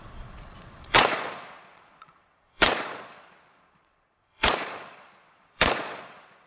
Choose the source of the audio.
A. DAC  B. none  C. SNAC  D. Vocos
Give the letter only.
D